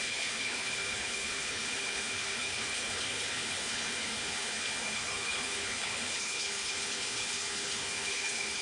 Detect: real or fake fake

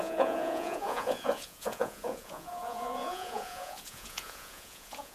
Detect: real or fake fake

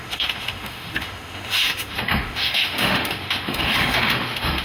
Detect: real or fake fake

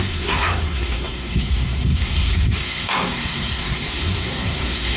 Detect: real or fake fake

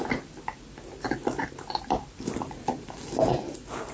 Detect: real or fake real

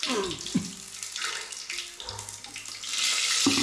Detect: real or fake real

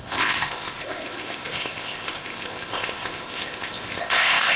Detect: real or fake fake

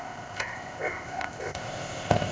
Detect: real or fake fake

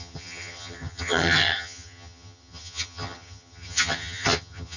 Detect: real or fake fake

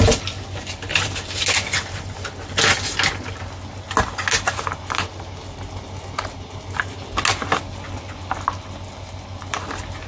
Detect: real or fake real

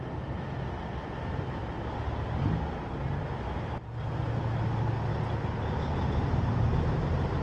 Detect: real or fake real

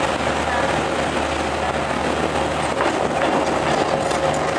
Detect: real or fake real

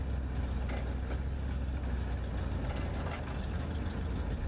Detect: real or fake real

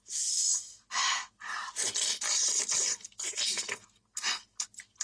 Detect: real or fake real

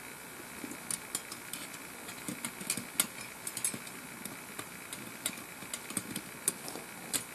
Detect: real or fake real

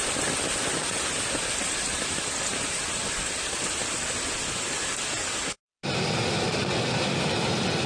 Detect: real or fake real